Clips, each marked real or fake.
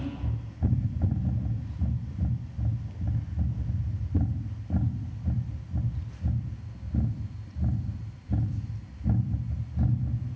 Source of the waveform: real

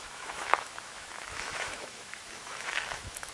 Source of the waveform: fake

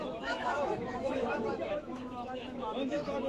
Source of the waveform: fake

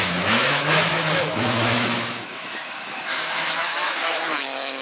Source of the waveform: fake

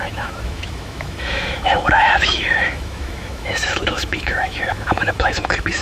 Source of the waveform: fake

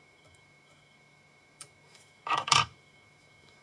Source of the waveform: fake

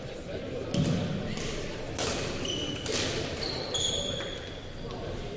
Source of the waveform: real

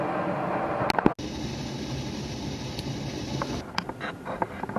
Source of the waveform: real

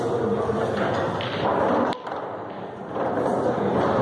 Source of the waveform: real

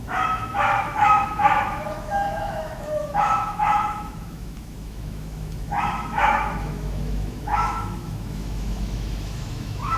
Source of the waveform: fake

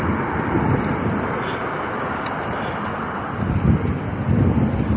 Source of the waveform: real